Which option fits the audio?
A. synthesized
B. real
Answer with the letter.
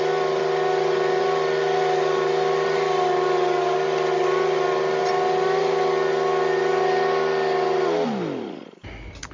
B